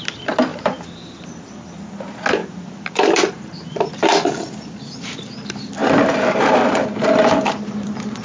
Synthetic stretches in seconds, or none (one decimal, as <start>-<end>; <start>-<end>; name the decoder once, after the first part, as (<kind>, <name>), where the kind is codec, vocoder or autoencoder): 0.5-1.5 (vocoder, BigVGAN v2); 2.4-3.9; 5.8-8.2